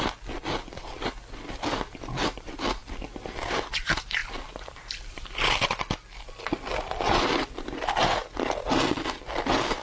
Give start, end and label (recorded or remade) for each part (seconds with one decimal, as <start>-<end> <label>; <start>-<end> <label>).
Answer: 0.0-9.8 recorded